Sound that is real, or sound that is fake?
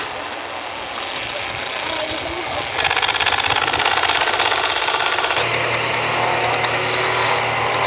real